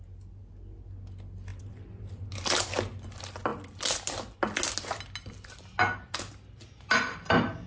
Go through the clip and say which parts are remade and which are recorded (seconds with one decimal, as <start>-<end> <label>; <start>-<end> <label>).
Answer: 0.0-7.7 recorded